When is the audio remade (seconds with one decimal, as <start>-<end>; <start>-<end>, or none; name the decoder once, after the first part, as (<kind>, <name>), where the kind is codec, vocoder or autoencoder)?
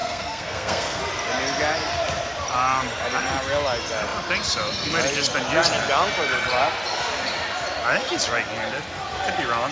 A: 0.0-1.0 (codec, SNAC)